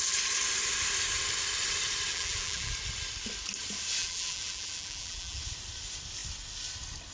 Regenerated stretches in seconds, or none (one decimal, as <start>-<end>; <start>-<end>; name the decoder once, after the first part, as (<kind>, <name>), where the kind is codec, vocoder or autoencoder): 2.1-2.7 (vocoder, BigVGAN v2); 4.0-5.4